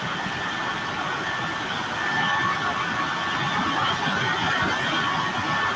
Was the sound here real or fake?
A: real